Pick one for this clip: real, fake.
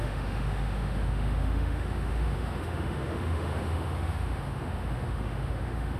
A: fake